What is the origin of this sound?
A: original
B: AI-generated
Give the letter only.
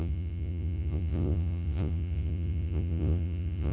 B